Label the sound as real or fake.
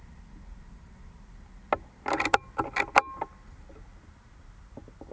real